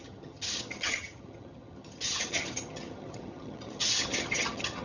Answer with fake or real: fake